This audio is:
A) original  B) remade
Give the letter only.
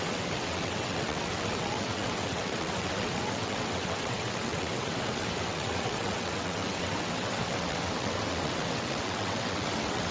B